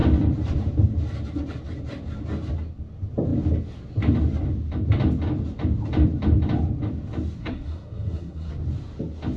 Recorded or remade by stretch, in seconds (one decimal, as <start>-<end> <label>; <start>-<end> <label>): 0.0-7.4 recorded; 7.4-8.5 remade; 8.5-9.4 recorded